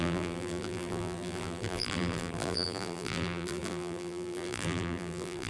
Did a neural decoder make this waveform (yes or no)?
yes